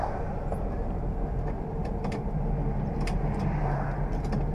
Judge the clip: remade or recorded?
remade